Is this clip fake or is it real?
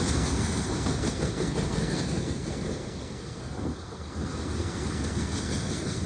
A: fake